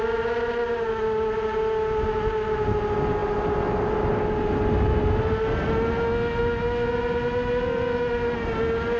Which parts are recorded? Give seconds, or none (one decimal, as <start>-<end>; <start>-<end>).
0.0-9.0